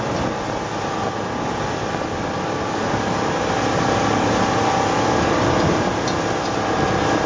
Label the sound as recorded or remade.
recorded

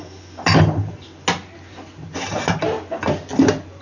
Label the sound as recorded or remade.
recorded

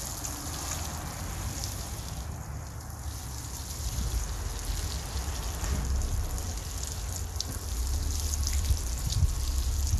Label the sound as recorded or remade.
recorded